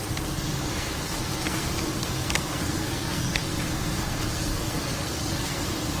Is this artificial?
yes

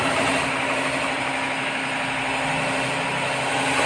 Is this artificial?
no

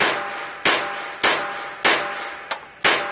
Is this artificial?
no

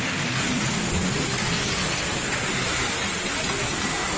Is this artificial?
no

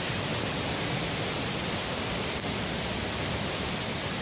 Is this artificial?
no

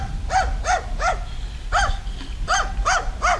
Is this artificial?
no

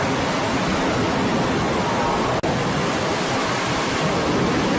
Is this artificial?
no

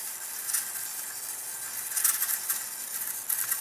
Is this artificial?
no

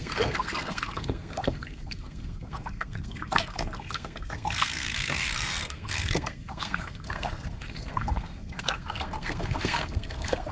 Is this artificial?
yes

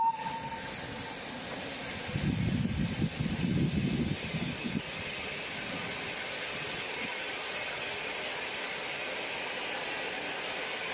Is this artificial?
no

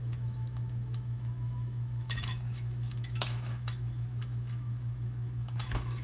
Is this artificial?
yes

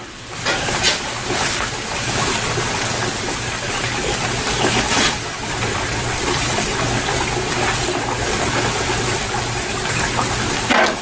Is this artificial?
no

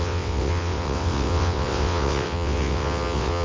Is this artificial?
yes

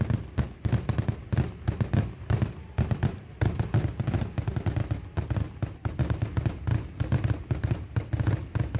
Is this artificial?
no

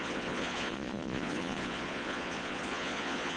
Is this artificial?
yes